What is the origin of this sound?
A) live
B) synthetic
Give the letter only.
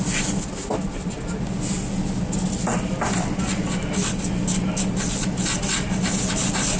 A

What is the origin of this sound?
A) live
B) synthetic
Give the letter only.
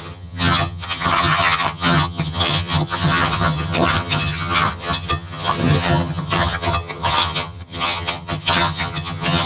B